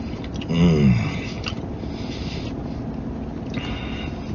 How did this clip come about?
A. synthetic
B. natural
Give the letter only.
B